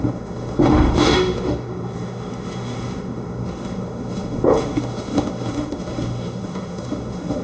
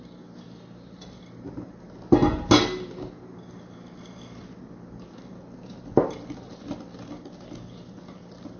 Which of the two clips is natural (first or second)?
second